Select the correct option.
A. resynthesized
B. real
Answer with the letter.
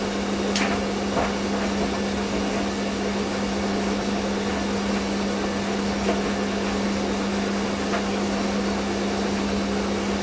B